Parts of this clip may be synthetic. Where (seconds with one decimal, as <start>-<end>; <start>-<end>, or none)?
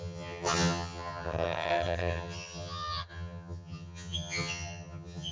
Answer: 0.0-5.3